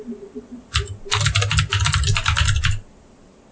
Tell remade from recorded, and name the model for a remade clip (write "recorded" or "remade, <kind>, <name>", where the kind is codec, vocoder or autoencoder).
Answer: recorded